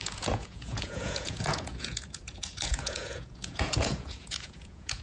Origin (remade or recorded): remade